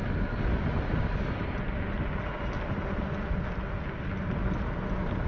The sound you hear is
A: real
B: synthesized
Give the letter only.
A